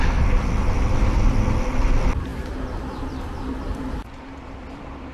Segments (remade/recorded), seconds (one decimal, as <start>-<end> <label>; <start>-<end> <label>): 0.0-2.3 remade; 2.3-3.0 recorded; 3.0-5.1 remade